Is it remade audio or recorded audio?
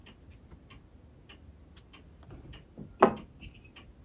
recorded